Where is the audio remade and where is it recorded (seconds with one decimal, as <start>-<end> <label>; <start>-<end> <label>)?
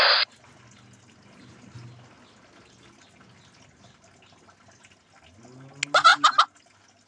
0.0-7.1 recorded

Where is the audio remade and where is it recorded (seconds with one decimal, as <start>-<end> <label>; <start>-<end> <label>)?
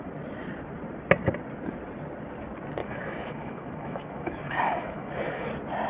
0.0-2.8 recorded; 2.8-5.5 remade; 5.5-5.9 recorded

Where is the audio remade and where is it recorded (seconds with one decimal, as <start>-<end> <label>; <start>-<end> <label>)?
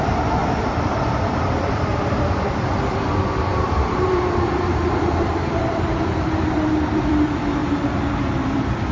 0.0-7.6 remade; 7.6-8.4 recorded; 8.4-8.9 remade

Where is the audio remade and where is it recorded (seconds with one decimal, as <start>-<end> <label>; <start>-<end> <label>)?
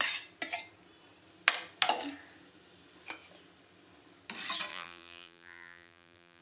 0.0-4.7 recorded; 4.7-6.4 remade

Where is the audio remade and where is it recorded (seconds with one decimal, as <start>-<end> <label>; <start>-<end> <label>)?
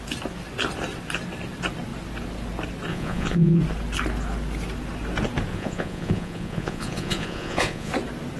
0.0-2.9 recorded; 2.9-3.6 remade; 3.6-5.5 recorded; 5.5-7.9 remade; 7.9-8.4 recorded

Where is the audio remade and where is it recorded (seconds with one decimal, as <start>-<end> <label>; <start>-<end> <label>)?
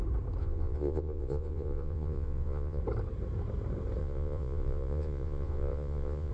0.0-0.4 recorded; 0.4-2.8 remade; 2.8-4.0 recorded; 4.0-6.3 remade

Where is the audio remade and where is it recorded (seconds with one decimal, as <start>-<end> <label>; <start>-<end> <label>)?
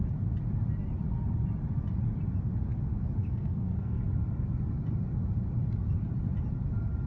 0.0-3.2 recorded; 3.2-4.0 remade; 4.0-7.1 recorded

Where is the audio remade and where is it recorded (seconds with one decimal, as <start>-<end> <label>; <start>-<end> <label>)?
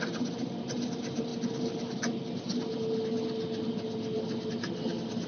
0.0-5.3 recorded